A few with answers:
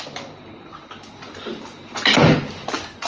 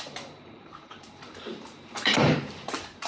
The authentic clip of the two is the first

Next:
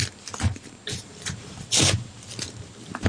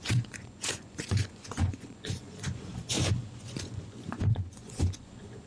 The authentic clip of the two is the first